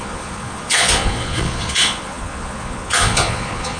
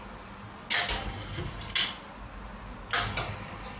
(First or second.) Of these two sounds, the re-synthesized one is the first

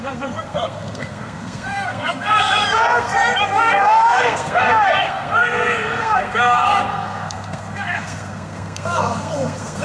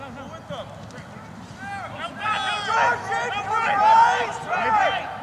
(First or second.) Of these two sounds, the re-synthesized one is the first